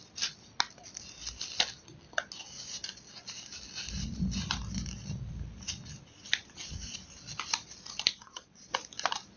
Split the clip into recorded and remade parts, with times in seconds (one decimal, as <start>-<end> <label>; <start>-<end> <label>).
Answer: 0.0-8.1 recorded; 8.1-8.7 remade; 8.7-9.4 recorded